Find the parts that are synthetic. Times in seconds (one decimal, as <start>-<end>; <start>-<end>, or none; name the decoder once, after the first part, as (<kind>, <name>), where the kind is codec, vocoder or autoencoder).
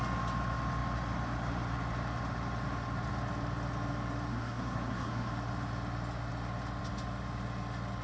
4.3-5.3 (codec, SNAC)